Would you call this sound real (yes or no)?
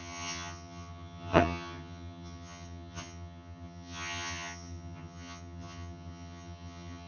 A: no